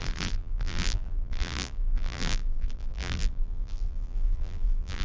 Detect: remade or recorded remade